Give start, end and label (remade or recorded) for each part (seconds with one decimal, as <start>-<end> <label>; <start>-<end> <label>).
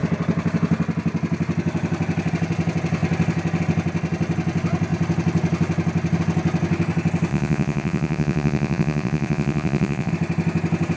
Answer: 0.0-7.3 recorded; 7.3-10.1 remade; 10.1-11.0 recorded